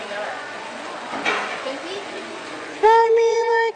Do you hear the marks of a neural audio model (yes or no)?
yes